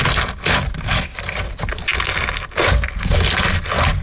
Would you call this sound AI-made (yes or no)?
no